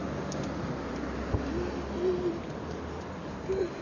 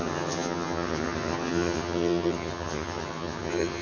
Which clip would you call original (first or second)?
first